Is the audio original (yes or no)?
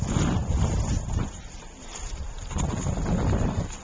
yes